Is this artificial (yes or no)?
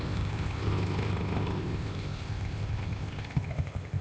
yes